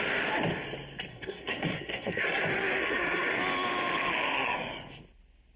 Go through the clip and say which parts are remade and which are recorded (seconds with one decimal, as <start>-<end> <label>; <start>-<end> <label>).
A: 0.0-1.1 recorded; 1.1-2.4 remade; 2.4-2.8 recorded; 2.8-3.4 remade; 3.4-5.6 recorded